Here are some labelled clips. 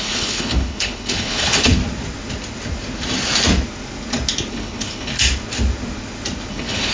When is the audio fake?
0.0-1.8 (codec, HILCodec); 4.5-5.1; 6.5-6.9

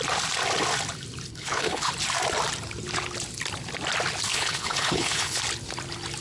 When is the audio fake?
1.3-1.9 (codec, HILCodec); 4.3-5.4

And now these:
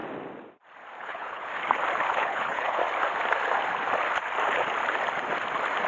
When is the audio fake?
1.0-1.5 (codec, HILCodec); 2.1-2.8

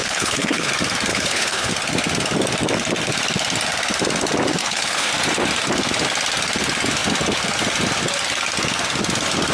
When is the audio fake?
0.0-0.7 (codec, HILCodec); 1.1-1.7; 4.6-5.1

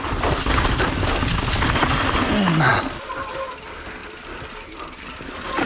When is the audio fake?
none